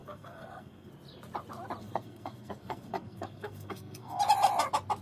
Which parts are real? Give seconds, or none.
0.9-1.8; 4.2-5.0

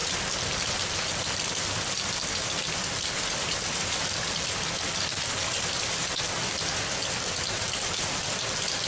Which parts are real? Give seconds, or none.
0.0-8.9

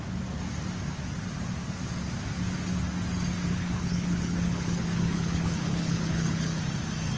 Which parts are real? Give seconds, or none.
0.0-3.5; 6.6-7.2

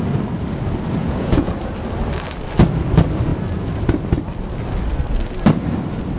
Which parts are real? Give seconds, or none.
0.0-1.0; 1.5-6.2